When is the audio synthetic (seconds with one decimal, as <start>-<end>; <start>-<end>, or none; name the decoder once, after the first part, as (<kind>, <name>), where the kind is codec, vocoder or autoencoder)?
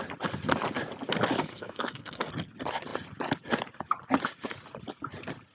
1.5-2.3 (codec, SNAC)